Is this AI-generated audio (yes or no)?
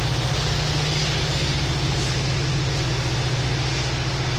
no